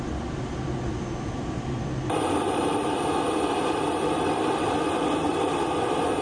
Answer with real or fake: real